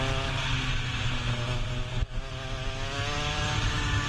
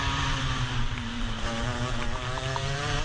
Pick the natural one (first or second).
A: first